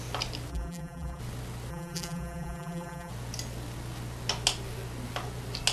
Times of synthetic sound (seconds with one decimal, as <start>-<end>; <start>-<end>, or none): 0.5-1.2; 1.7-3.1